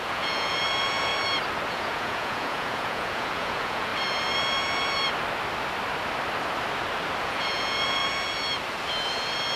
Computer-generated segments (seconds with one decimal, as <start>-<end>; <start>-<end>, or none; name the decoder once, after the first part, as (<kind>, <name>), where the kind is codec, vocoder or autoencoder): 0.0-1.1 (vocoder, Vocos); 1.7-3.9; 7.2-8.0